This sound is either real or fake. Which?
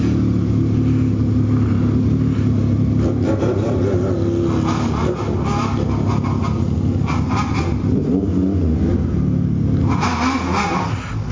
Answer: real